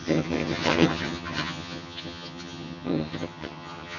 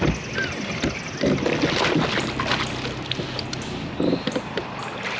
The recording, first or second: second